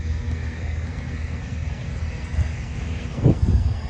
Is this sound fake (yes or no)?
yes